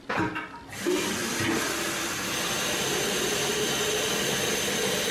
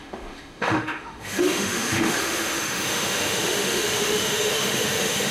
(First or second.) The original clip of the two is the first